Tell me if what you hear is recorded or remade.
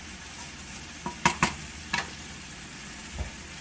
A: recorded